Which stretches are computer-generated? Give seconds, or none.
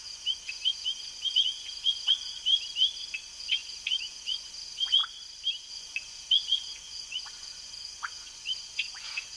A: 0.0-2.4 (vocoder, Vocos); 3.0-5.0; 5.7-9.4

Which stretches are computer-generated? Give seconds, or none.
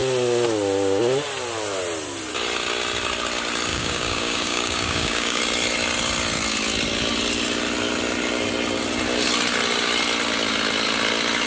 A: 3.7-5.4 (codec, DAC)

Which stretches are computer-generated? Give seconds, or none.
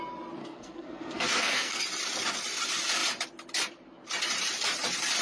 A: 0.4-1.8 (codec, SNAC)